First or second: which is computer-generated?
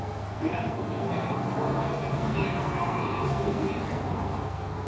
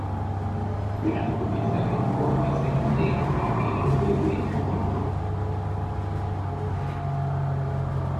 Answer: first